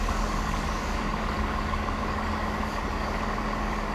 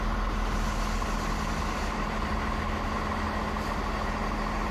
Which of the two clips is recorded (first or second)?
second